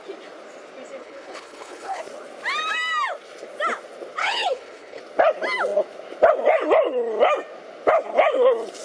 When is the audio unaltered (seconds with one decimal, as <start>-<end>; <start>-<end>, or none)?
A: 0.0-1.0; 2.0-4.2; 5.0-8.8